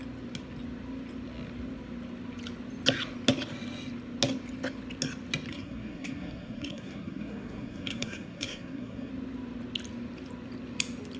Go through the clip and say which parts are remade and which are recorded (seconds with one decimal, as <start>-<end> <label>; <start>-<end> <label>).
0.0-5.5 recorded; 5.5-9.1 remade; 9.1-11.2 recorded